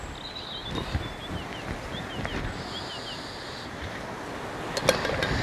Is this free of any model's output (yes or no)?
yes